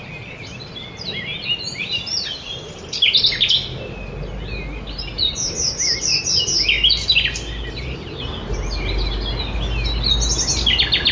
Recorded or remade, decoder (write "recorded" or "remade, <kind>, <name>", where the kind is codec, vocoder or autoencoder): recorded